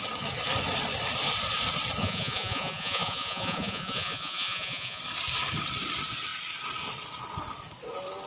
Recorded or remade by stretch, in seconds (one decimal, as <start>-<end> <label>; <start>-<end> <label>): 0.0-2.0 recorded; 2.0-5.0 remade; 5.0-8.3 recorded